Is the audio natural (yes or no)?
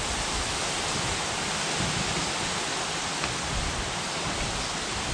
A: yes